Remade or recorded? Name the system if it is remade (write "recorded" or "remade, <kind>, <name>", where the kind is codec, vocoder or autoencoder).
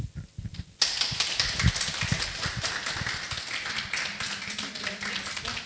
recorded